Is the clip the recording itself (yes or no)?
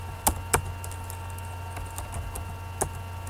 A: yes